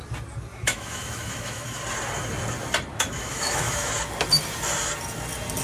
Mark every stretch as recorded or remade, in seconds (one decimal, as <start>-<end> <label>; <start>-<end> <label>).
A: 0.0-0.5 recorded; 0.5-1.8 remade; 1.8-2.9 recorded; 2.9-3.9 remade; 3.9-5.6 recorded